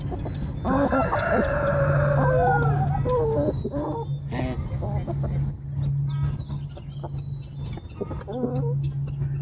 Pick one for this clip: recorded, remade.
recorded